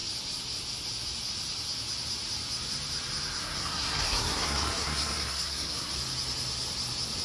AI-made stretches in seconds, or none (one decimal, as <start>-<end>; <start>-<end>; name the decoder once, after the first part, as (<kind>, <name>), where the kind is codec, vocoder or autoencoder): 3.4-5.9 (codec, SNAC)